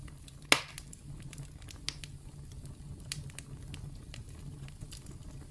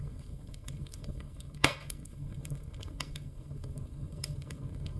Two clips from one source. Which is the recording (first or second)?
first